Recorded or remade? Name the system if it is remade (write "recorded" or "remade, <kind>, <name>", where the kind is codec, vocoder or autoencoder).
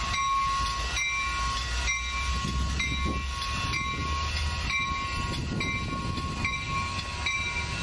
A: recorded